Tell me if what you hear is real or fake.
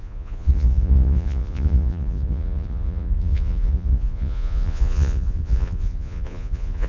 fake